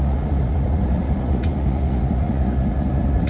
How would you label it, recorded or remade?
remade